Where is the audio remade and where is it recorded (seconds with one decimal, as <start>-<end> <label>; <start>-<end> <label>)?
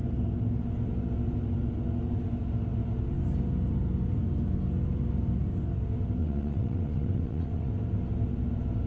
0.0-6.2 recorded; 6.2-7.7 remade; 7.7-8.9 recorded